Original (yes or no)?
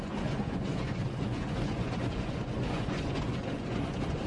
no